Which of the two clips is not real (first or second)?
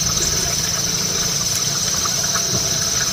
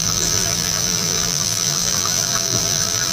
second